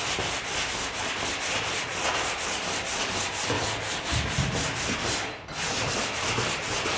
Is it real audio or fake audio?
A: real